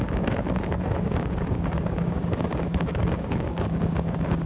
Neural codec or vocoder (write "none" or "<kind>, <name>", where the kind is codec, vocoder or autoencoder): codec, DAC